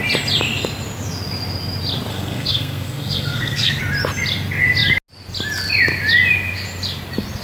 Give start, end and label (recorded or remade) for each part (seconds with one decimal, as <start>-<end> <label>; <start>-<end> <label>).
0.0-2.1 recorded; 2.1-3.8 remade; 3.8-7.4 recorded